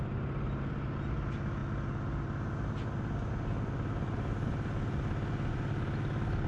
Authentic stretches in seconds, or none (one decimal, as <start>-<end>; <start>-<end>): 0.0-6.5